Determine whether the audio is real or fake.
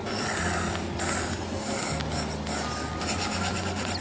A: real